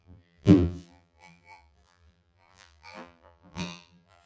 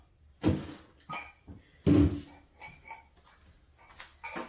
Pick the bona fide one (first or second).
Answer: second